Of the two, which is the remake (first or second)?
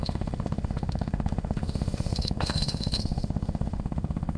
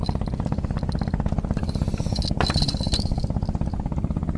first